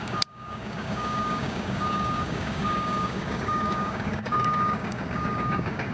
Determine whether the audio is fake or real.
fake